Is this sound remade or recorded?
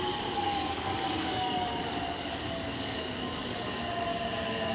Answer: remade